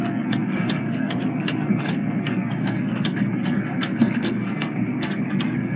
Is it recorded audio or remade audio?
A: remade